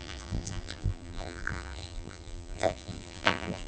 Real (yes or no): no